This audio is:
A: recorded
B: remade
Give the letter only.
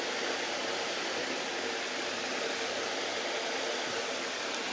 A